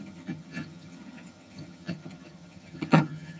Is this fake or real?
fake